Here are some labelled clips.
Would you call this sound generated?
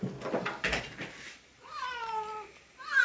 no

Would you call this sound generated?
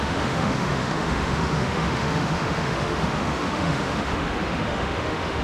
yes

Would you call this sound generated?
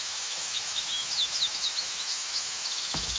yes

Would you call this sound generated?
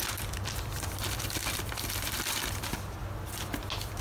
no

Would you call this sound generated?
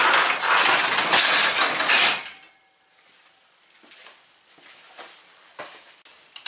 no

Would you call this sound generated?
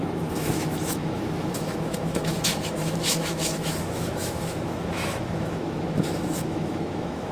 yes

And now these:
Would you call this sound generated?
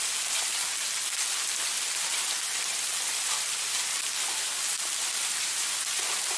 no